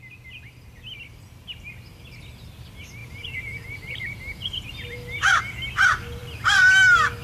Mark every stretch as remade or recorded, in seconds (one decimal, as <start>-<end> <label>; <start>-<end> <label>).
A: 0.0-3.0 recorded; 3.0-5.4 remade; 5.4-6.2 recorded; 6.2-6.7 remade; 6.7-7.2 recorded